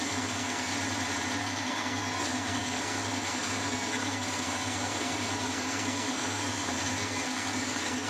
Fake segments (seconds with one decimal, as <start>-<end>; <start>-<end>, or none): 0.0-0.7; 1.4-8.1